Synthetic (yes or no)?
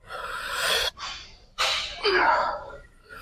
yes